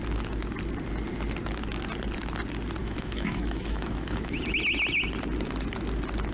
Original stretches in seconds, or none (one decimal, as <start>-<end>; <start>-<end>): 0.0-2.8; 4.4-6.3